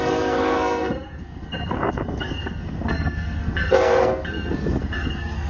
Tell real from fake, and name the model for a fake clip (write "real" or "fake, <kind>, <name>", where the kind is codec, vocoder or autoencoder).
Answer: fake, codec, SNAC